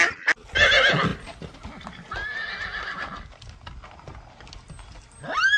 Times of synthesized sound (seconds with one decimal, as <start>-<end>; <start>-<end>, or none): none